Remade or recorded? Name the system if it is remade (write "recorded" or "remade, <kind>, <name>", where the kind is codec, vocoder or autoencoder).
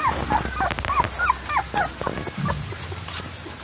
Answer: recorded